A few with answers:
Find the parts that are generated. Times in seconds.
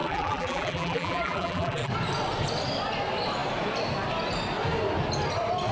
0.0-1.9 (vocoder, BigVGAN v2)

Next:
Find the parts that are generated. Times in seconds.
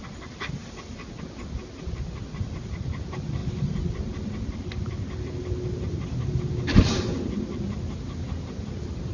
none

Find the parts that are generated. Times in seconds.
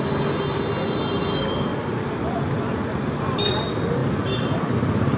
4.0-5.2 (vocoder, BigVGAN v2)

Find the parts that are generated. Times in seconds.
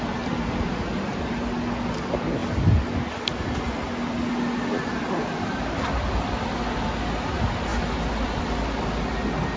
none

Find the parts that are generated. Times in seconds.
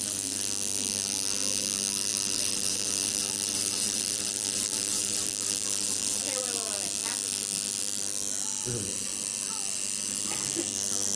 2.1-6.2 (vocoder, BigVGAN v2)